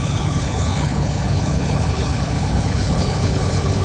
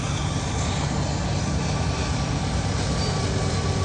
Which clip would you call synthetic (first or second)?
first